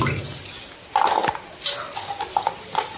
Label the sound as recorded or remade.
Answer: recorded